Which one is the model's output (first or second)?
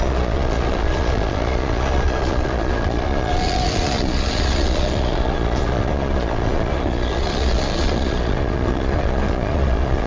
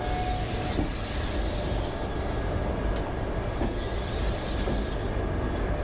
first